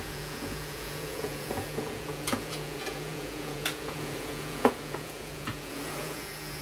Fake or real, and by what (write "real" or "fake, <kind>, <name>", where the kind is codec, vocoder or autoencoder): fake, vocoder, Vocos